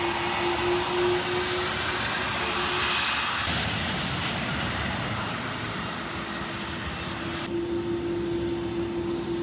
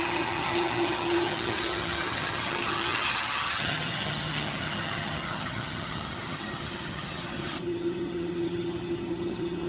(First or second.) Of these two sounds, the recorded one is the first